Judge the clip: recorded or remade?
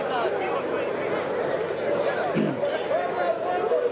recorded